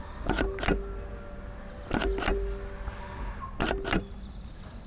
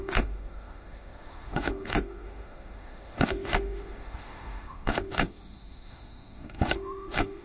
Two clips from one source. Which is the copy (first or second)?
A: second